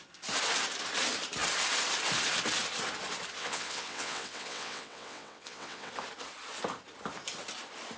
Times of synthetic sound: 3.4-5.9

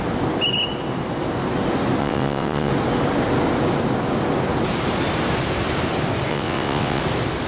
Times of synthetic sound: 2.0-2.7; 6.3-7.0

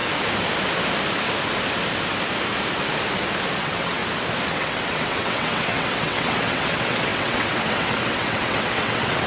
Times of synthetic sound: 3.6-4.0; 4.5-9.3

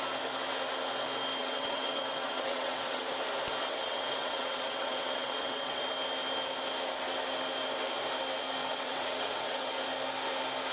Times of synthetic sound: 1.4-3.0; 3.6-5.8; 8.6-9.7

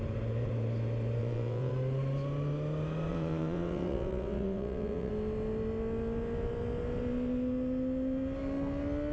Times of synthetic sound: 1.2-1.7; 3.1-5.1

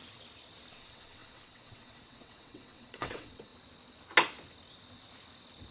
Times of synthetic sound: 0.7-3.5